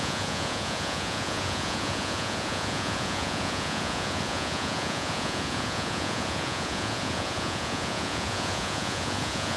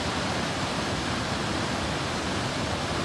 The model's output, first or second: first